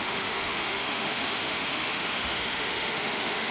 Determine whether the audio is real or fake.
fake